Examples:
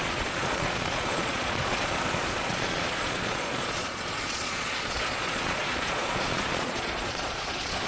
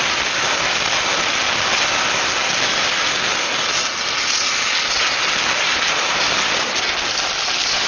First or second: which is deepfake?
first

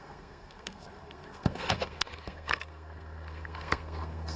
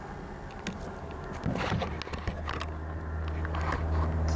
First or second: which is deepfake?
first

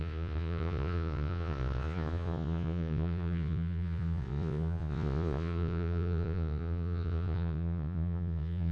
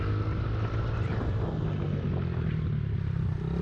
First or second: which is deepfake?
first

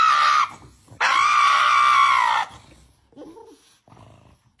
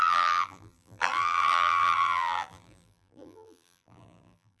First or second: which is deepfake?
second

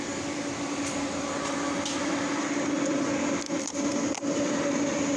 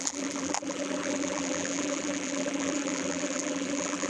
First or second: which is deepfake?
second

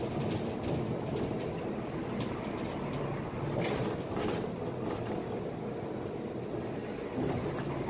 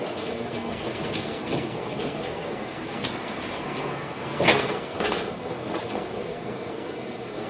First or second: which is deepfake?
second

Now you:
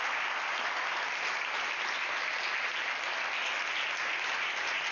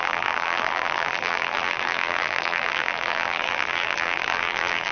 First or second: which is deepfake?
second